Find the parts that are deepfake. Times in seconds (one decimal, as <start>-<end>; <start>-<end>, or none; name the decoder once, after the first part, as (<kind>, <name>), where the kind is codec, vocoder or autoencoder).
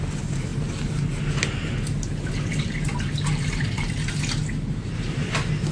0.5-1.2 (vocoder, BigVGAN v2); 2.5-4.5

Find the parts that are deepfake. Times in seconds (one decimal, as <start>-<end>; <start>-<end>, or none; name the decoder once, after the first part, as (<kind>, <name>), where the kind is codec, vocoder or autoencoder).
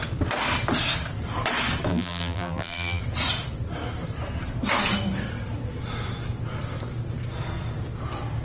1.9-3.0 (vocoder, BigVGAN v2)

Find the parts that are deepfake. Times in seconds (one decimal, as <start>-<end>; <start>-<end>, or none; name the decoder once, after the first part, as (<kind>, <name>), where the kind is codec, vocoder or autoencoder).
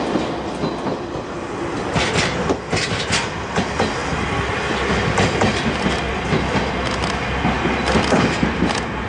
none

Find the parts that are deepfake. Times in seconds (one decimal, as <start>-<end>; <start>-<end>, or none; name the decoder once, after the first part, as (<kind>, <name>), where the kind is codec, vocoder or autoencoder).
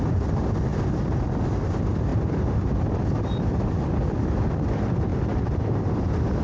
2.1-4.5 (vocoder, BigVGAN v2); 5.1-5.9